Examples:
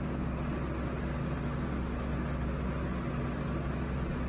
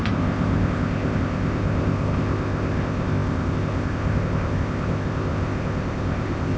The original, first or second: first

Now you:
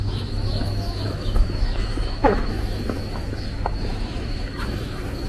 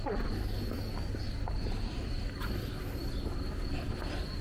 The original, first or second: second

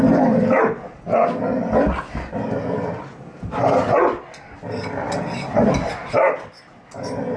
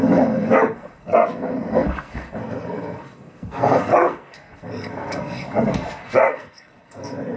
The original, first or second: first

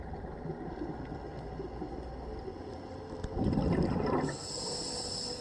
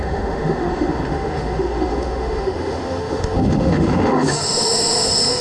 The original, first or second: first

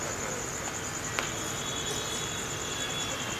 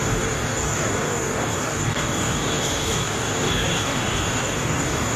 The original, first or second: first